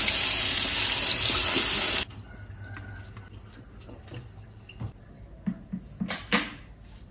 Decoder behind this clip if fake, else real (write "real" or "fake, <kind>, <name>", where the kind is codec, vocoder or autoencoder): real